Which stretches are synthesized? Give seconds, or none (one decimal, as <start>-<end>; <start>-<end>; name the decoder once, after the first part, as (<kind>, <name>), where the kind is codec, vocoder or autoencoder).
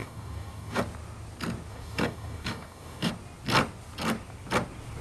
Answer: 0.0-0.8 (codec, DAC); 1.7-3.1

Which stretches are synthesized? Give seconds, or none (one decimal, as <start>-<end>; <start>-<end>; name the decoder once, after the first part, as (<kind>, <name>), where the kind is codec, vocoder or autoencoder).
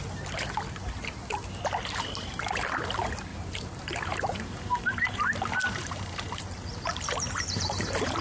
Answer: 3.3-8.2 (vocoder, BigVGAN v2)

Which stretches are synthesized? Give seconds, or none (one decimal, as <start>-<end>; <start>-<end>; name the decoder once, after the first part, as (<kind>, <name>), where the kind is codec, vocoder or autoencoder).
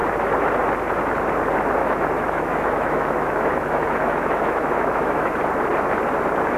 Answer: 1.8-5.3 (autoencoder, DAC-VAE)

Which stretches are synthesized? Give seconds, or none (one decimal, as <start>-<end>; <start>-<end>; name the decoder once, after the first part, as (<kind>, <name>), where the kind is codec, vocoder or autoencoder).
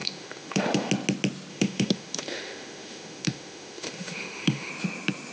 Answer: 0.0-0.9 (autoencoder, DAC-VAE); 1.5-4.7